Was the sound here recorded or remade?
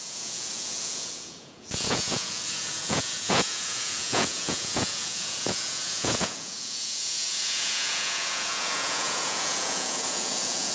remade